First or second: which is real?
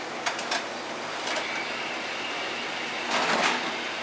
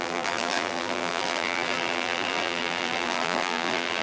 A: first